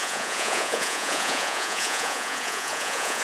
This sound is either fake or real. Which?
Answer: fake